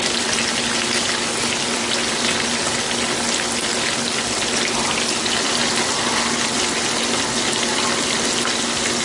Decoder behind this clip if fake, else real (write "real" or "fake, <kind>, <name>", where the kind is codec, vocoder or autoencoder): real